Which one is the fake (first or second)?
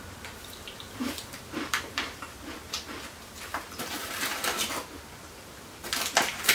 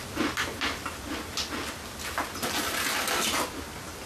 first